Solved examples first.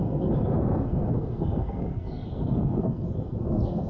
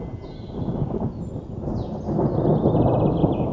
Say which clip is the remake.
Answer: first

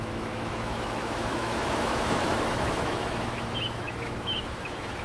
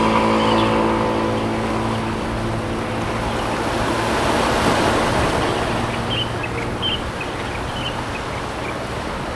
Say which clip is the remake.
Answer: first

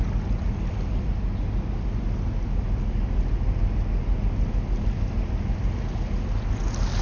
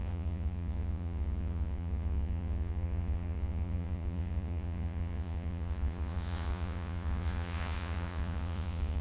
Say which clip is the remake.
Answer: second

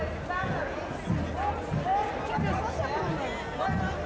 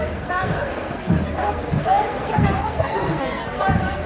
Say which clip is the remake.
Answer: second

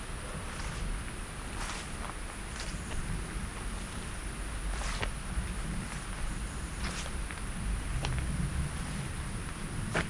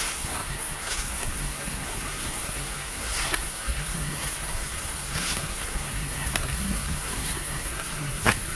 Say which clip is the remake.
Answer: second